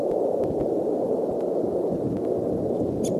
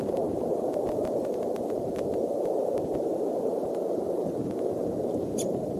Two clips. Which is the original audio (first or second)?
first